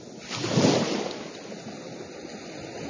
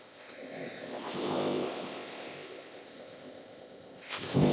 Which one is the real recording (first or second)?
first